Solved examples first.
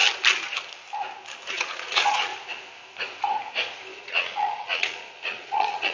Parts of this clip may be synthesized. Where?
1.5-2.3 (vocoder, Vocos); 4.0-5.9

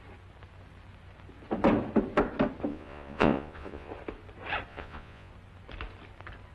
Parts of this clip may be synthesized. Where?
2.7-3.9 (vocoder, Vocos); 4.7-5.3